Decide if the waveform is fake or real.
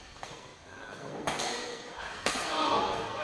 fake